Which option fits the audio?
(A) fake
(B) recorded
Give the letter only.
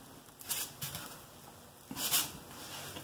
B